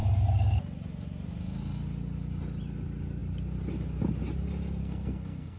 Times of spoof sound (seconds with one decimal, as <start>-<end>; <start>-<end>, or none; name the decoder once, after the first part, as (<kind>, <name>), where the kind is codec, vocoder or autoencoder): 4.8-5.6 (codec, SNAC)

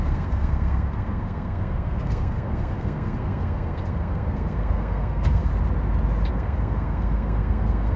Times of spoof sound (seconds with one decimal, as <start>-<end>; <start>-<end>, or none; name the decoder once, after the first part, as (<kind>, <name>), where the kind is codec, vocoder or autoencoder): 0.0-5.5 (codec, SNAC); 6.3-8.0

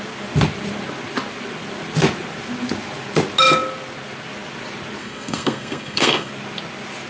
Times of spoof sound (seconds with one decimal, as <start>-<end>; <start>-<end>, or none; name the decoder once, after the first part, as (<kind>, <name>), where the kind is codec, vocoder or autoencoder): 5.0-6.3 (codec, SNAC)

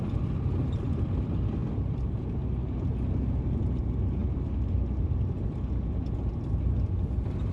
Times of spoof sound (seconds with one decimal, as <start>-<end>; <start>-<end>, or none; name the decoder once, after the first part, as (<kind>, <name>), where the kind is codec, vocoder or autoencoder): none

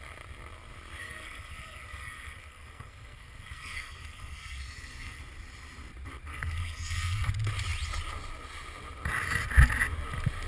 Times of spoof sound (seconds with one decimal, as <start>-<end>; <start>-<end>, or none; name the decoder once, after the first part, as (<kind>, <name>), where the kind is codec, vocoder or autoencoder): 1.0-5.2 (codec, SNAC); 6.3-7.3

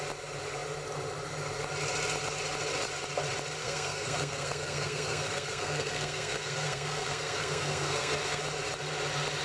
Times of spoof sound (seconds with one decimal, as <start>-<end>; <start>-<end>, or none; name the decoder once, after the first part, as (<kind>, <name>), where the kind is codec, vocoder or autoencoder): 3.6-8.4 (codec, SNAC)

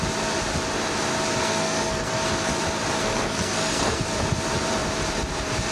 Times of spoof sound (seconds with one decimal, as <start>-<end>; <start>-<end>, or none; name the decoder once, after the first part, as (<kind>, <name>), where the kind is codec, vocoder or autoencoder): 1.4-2.5 (codec, SNAC); 3.0-4.0

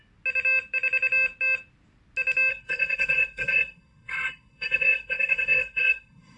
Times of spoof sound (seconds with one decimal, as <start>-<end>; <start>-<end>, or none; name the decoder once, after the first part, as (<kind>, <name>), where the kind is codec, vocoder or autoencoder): 2.5-6.4 (codec, SNAC)